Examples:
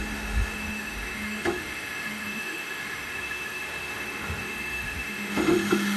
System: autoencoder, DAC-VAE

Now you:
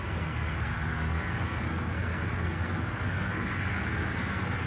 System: codec, SNAC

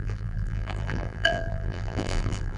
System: vocoder, BigVGAN v2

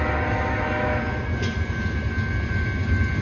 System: none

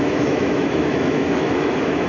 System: autoencoder, DAC-VAE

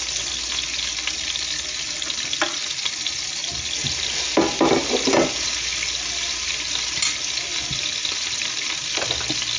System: none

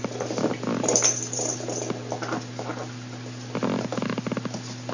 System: none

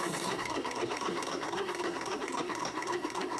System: codec, SNAC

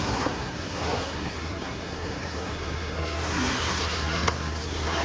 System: codec, SNAC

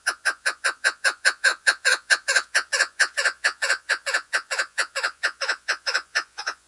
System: vocoder, Vocos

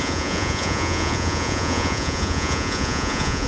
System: vocoder, Vocos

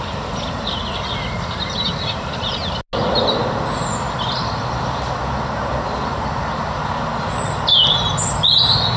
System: none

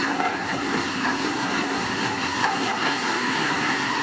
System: codec, SNAC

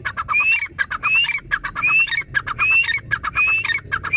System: none